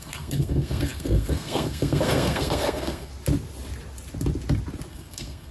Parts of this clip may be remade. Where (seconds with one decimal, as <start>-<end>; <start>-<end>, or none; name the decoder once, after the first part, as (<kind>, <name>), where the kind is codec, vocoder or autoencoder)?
0.0-3.1 (codec, SNAC); 4.9-5.5

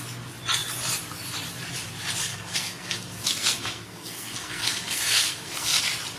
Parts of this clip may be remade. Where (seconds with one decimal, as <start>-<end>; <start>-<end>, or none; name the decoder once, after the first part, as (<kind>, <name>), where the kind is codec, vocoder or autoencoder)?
2.3-5.8 (codec, SNAC)

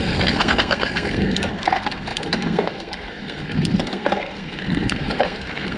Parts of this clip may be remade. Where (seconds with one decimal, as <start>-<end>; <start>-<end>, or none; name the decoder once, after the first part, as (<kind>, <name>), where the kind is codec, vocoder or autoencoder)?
0.0-5.8 (codec, SNAC)

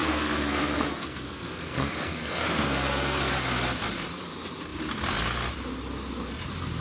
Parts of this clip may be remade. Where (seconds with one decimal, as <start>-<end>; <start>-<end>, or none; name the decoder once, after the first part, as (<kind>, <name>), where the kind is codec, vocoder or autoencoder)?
0.0-3.3 (codec, SNAC)

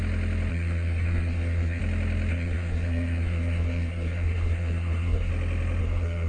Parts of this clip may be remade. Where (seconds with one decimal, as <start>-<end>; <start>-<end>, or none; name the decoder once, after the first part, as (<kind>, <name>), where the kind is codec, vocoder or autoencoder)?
0.5-1.8 (codec, SNAC); 2.3-5.3; 5.8-6.3

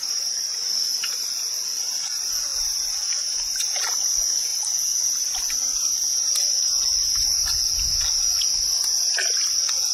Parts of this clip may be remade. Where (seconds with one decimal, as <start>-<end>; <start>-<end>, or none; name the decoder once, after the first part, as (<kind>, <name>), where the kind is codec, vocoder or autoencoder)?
none